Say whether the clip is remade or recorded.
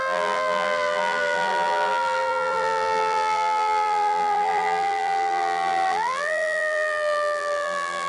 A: remade